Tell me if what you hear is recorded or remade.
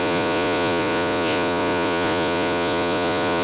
remade